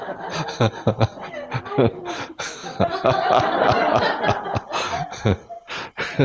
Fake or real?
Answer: real